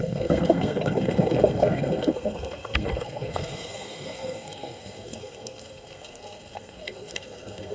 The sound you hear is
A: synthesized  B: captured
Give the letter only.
A